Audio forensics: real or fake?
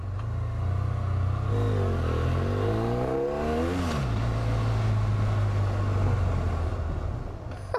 real